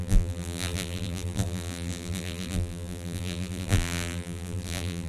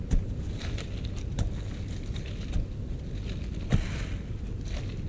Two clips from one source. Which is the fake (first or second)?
first